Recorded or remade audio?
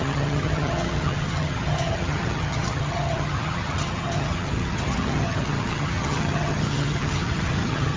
remade